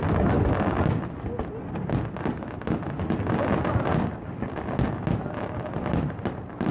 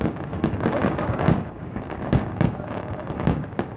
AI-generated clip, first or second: second